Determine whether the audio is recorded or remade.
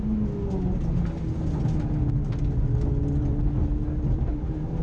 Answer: recorded